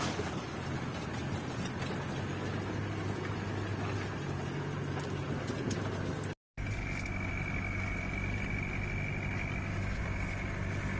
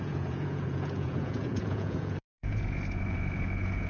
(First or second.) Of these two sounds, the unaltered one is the first